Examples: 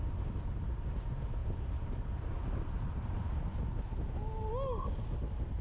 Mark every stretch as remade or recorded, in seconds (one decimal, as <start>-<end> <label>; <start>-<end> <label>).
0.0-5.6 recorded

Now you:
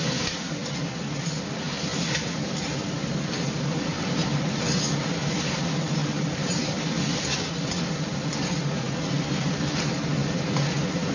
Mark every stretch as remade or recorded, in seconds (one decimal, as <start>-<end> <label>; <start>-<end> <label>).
0.0-6.0 recorded; 6.0-6.8 remade; 6.8-11.1 recorded

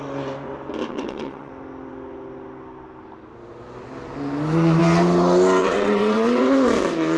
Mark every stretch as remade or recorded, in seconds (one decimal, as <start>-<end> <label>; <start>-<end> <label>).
0.0-0.9 recorded; 0.9-1.5 remade; 1.5-5.6 recorded; 5.6-6.4 remade; 6.4-7.2 recorded